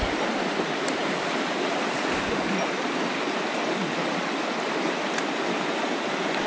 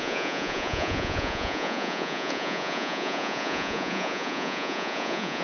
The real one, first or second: first